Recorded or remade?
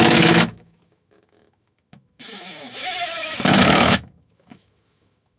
remade